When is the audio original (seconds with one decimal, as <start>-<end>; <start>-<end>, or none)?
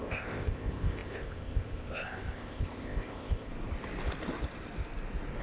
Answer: 3.5-5.4